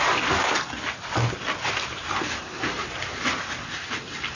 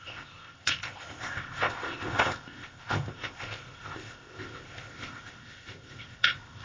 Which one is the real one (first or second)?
first